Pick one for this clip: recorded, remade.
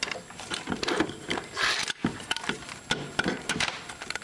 recorded